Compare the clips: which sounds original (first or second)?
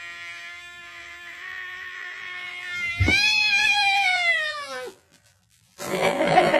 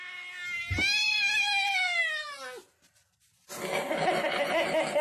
second